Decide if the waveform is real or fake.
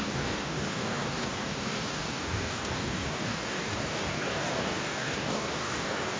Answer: fake